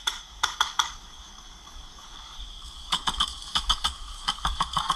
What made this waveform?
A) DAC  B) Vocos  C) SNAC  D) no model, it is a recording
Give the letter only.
A